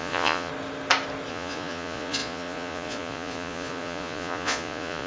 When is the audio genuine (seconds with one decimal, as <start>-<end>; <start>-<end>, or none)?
0.5-1.3